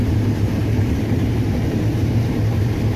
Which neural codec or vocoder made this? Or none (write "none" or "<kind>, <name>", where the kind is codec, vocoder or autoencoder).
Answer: vocoder, BigVGAN v2